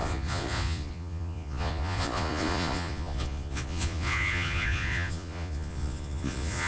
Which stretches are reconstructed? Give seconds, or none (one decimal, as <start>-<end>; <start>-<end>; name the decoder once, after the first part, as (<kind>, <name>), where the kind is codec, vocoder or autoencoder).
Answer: 0.0-6.7 (vocoder, Vocos)